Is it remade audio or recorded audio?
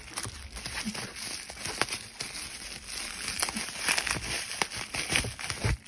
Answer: recorded